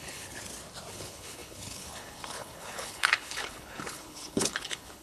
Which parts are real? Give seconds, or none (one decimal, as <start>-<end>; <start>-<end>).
0.4-0.9